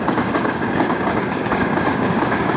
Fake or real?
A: fake